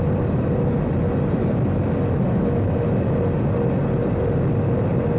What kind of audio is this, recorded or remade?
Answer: recorded